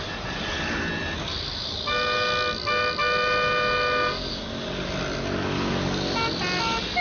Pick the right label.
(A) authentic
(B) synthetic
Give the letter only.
A